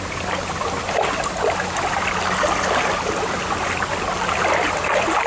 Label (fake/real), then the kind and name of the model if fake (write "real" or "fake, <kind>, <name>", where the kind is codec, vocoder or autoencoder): real